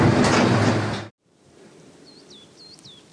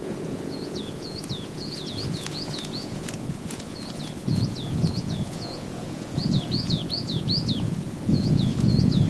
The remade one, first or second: second